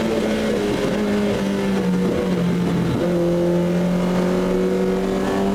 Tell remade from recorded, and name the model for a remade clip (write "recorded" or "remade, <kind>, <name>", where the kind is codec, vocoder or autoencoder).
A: recorded